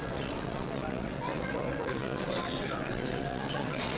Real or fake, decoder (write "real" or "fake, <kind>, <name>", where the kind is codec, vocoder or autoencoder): fake, vocoder, WaveNeXt